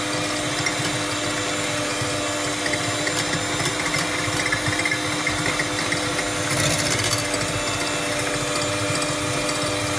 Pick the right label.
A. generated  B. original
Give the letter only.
B